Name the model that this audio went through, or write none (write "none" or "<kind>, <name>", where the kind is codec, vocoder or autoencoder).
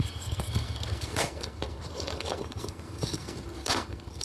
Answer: codec, SNAC